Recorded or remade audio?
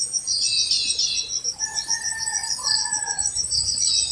recorded